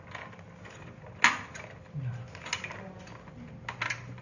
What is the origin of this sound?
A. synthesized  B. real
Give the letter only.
B